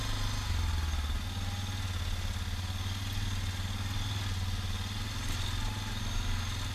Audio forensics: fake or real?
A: real